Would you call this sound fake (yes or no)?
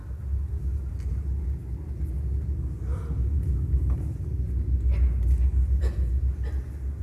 no